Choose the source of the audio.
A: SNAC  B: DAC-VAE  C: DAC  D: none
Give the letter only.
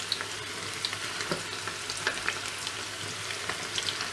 D